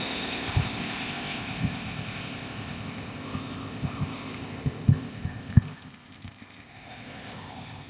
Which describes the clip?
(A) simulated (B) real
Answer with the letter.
A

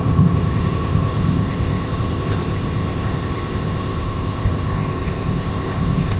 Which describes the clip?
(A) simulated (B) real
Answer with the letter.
A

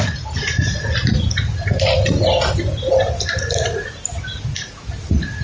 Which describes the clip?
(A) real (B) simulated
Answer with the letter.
A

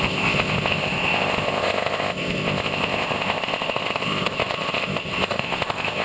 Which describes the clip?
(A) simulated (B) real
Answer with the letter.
A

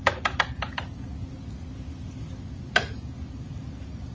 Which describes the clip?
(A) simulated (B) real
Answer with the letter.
B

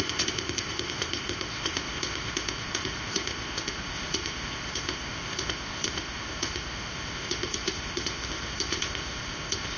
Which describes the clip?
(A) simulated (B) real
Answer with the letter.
A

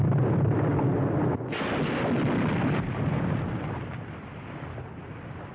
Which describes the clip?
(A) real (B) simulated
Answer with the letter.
A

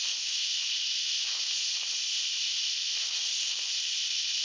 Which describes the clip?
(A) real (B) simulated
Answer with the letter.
B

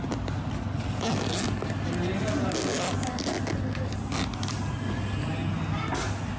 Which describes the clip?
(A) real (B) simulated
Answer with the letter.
A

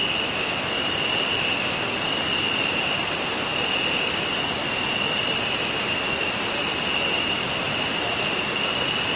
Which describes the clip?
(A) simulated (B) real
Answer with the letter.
B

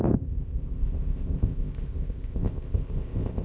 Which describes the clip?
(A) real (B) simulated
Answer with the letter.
B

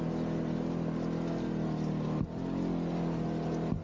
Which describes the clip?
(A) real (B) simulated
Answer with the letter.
A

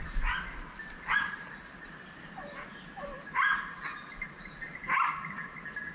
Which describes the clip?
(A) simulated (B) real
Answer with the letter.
B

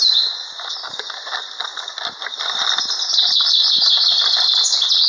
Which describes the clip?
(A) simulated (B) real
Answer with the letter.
B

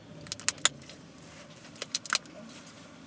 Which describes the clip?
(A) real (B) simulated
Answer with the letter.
A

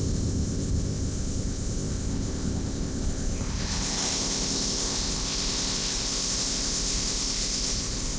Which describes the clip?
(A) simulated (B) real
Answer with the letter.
A